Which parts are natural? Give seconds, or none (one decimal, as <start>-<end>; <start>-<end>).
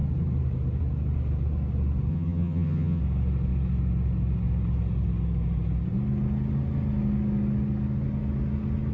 0.0-2.1; 3.0-8.9